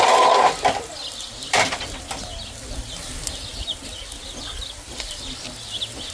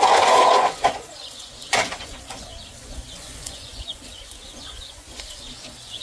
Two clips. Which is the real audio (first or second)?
first